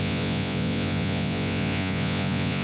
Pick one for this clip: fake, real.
fake